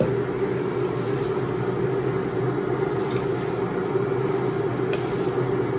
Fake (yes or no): no